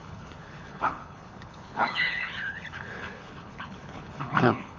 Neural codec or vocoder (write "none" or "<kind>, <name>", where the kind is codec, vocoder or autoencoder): codec, HILCodec